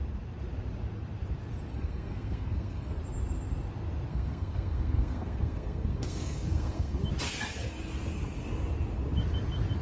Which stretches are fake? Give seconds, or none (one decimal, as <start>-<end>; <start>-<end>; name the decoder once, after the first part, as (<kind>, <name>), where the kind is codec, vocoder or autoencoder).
1.7-3.0 (codec, SNAC); 4.1-7.0